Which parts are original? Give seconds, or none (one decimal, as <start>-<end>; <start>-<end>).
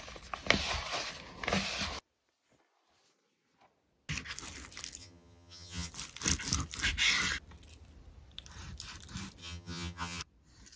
0.0-5.0; 5.9-9.4; 10.2-10.8